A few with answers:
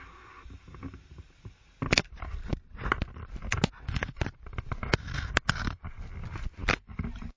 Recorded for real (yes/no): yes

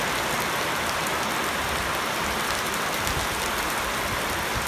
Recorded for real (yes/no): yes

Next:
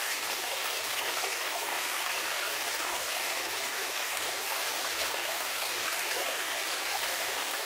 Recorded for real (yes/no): no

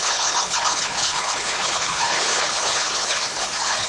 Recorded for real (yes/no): no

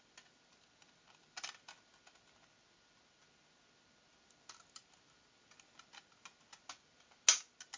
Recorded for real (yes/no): yes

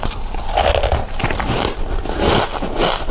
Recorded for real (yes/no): yes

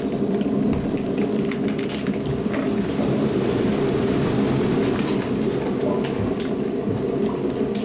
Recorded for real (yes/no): yes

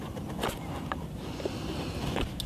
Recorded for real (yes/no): yes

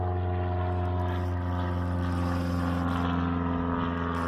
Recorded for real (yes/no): yes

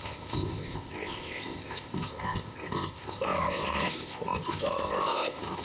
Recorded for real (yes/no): no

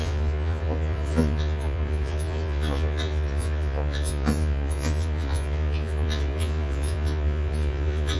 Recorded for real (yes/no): no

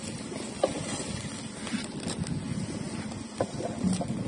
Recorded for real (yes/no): yes